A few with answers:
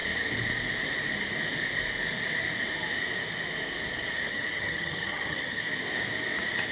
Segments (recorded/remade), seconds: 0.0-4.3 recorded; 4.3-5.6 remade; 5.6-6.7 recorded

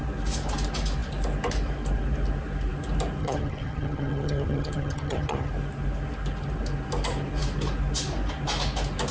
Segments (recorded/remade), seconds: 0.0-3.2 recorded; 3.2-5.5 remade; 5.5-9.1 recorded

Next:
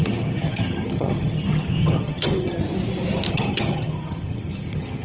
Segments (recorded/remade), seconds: 0.0-2.6 remade; 2.6-3.3 recorded; 3.3-5.0 remade

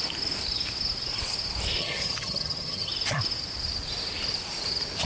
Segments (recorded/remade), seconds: 0.0-1.8 recorded; 1.8-2.9 remade; 2.9-5.0 recorded